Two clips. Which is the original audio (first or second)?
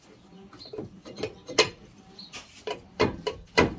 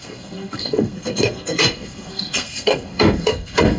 first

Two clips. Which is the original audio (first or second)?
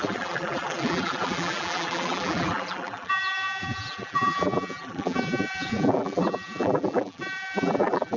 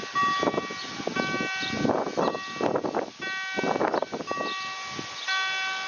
second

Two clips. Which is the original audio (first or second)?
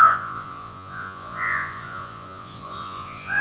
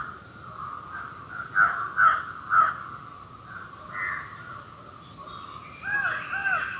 second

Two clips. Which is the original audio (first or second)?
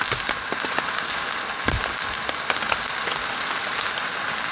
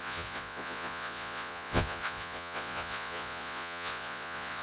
first